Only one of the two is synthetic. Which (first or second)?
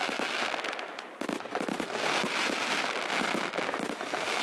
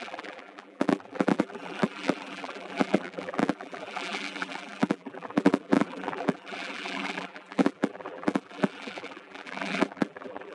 second